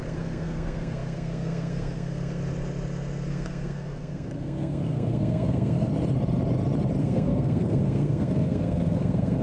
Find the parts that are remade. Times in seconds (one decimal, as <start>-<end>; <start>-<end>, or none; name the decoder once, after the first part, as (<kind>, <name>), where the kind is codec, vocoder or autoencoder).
0.0-2.4 (codec, SNAC); 3.3-5.9; 7.0-9.4